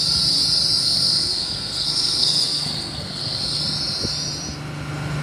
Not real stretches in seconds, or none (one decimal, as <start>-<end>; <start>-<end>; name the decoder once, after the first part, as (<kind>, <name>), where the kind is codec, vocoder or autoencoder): 0.8-3.6 (codec, SNAC)